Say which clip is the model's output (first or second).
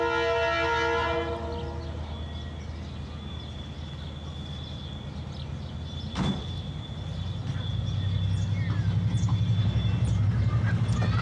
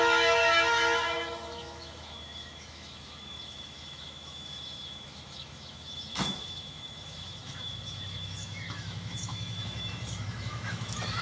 second